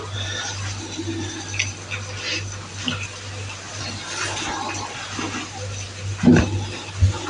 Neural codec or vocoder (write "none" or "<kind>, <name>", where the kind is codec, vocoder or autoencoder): none